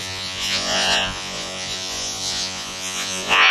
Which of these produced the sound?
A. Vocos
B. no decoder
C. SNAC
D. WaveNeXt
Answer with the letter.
A